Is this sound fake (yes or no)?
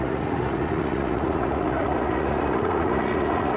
yes